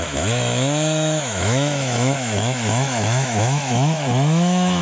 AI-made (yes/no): yes